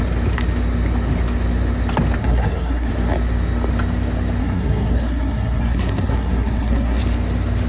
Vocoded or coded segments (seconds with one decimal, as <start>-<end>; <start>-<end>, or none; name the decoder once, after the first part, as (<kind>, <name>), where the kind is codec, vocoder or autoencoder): 2.2-2.9 (codec, SNAC); 4.4-7.0